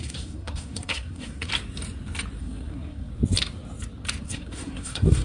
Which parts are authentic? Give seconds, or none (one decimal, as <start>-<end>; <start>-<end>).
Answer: 1.5-2.4; 3.1-4.2